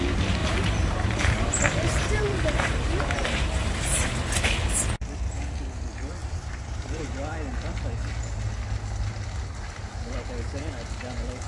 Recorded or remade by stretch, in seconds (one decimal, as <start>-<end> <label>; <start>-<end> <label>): 0.0-0.4 recorded; 0.4-4.4 remade; 4.4-6.2 recorded; 6.2-7.0 remade; 7.0-11.5 recorded